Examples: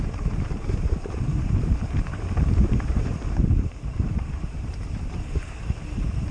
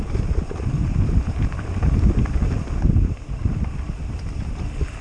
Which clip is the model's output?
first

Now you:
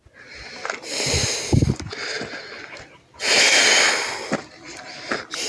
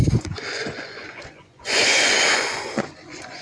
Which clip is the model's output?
second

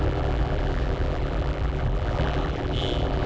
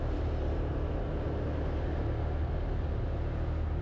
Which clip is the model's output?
first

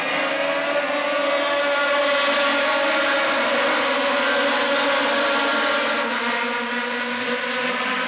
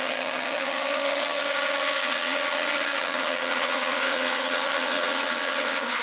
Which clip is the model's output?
second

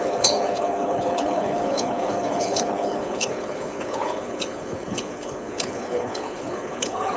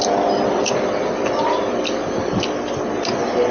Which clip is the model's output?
first